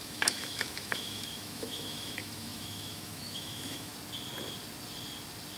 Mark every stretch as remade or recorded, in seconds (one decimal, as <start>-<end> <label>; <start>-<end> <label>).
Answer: 0.0-3.9 remade; 3.9-5.6 recorded